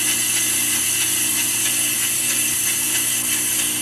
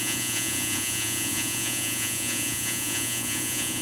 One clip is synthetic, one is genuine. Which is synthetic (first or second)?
second